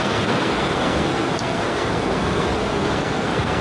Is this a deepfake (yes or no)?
yes